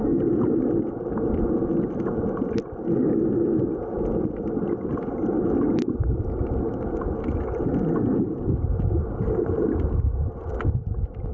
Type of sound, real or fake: real